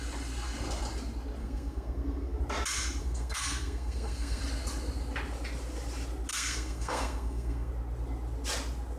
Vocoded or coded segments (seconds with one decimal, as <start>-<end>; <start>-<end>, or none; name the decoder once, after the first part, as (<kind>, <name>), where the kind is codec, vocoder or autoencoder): 1.4-2.4 (codec, SNAC); 3.0-4.4; 6.3-7.7